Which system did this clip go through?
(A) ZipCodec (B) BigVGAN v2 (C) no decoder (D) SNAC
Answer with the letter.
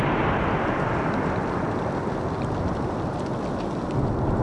C